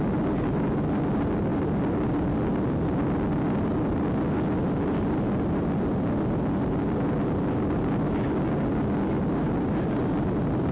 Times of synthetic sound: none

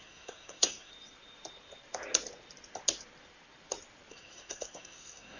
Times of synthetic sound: 0.0-0.9; 4.1-5.4